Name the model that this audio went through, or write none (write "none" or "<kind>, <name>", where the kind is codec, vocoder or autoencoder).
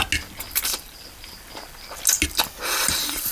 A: none